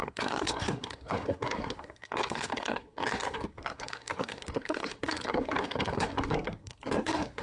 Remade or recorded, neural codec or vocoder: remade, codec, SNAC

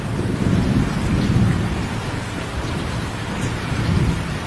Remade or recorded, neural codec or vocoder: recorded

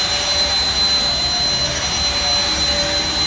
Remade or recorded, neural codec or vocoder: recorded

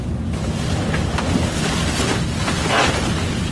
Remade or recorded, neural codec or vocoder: recorded